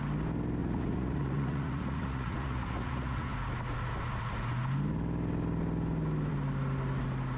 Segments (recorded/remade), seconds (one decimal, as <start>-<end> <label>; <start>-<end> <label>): 0.0-0.6 recorded; 0.6-3.3 remade; 3.3-7.4 recorded